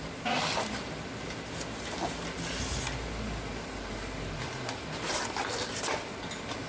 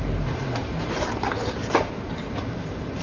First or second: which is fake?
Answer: second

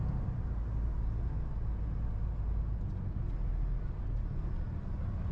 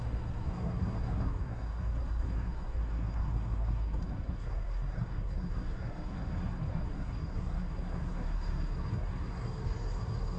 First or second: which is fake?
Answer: second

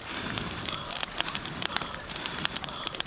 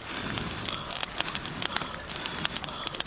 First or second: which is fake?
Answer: first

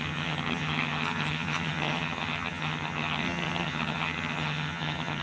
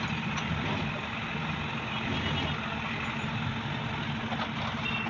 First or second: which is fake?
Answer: first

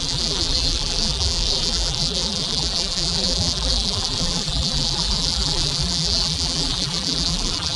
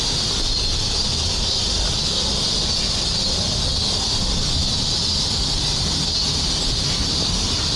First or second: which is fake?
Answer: first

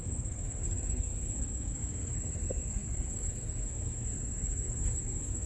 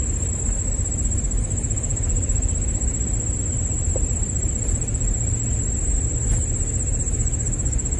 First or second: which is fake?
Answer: first